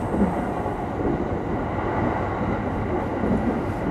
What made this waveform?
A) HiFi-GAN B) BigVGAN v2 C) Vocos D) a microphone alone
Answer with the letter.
D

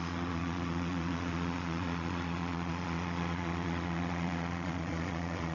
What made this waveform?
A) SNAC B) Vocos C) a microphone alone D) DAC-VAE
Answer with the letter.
B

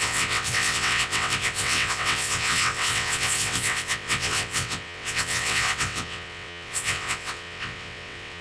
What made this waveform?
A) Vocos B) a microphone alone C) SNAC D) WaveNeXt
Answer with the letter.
D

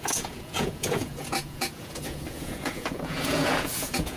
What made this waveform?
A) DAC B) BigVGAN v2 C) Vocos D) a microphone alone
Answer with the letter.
C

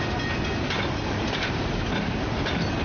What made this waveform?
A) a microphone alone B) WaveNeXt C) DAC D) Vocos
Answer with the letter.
A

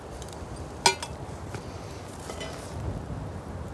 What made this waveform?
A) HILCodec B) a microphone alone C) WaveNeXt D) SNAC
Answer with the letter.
B